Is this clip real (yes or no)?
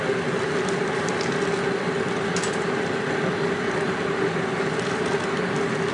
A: yes